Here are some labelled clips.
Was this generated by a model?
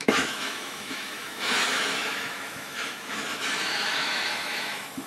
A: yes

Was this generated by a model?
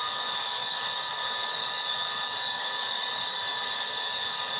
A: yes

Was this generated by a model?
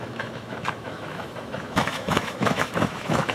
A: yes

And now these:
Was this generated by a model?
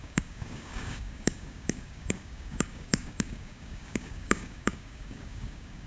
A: yes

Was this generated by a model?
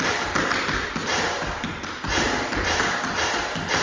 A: no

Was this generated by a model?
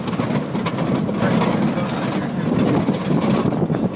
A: no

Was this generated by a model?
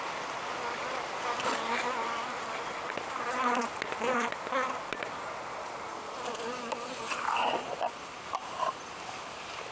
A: no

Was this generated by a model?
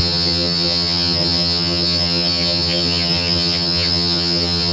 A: yes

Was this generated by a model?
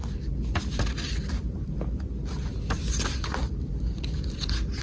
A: no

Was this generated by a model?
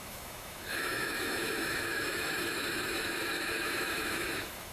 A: yes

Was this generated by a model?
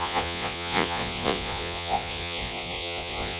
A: yes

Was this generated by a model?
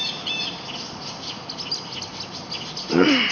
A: no